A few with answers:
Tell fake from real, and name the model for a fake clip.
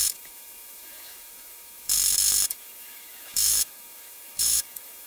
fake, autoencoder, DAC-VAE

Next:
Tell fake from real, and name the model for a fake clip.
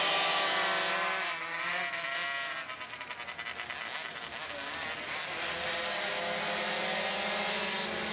real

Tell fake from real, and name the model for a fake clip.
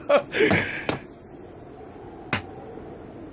real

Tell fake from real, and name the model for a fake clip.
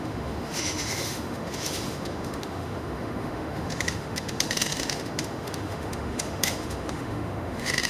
fake, autoencoder, DAC-VAE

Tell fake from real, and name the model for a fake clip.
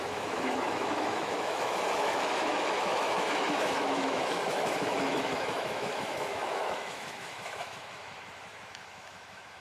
fake, autoencoder, DAC-VAE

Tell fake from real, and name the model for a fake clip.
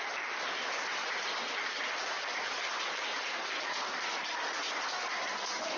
real